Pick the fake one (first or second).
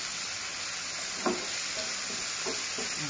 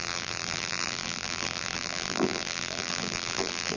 second